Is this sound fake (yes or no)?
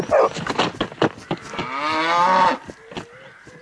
no